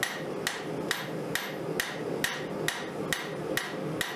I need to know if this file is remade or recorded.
recorded